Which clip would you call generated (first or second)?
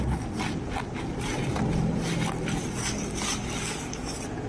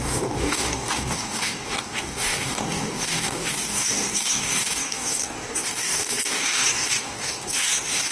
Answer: second